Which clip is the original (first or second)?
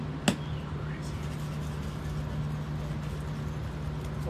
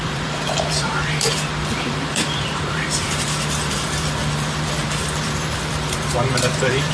first